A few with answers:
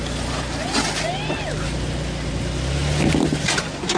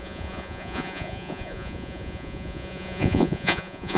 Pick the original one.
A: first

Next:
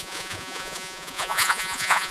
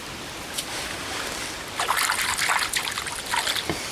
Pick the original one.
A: second